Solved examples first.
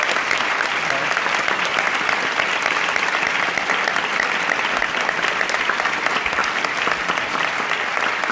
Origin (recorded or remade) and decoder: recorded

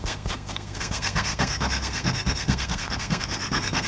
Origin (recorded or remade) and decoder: remade, codec, SNAC